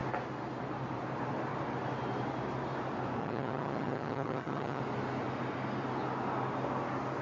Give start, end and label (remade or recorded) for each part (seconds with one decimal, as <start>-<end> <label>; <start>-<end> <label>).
0.0-3.2 recorded; 3.2-4.8 remade; 4.8-7.2 recorded

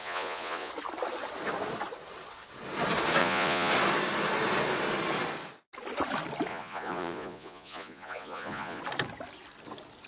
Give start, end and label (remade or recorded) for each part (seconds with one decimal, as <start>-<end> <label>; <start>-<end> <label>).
0.0-0.7 remade; 0.7-3.2 recorded; 3.2-3.7 remade; 3.7-6.5 recorded; 6.5-8.8 remade; 8.8-10.1 recorded